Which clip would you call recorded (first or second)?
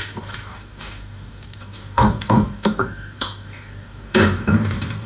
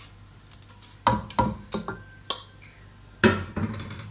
second